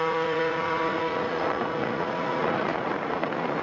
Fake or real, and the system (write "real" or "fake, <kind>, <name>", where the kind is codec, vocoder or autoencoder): fake, vocoder, Vocos